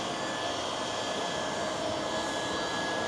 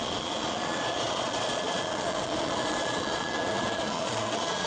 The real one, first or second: first